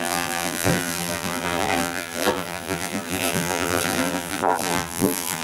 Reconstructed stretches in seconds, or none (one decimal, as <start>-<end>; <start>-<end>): 0.0-5.4